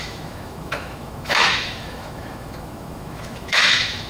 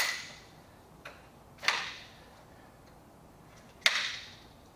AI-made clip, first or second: first